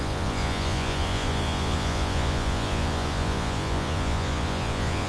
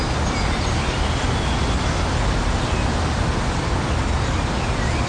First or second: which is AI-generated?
first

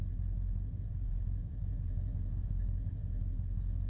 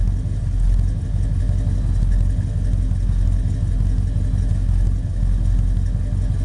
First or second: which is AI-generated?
first